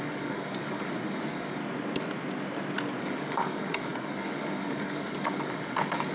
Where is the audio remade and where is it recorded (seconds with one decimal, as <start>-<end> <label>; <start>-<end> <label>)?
0.0-1.6 remade; 1.6-3.0 recorded; 3.0-6.1 remade